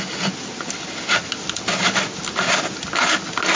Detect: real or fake real